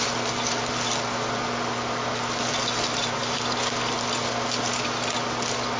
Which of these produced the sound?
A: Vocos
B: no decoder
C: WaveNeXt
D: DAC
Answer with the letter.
B